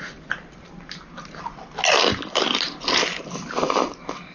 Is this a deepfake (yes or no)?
no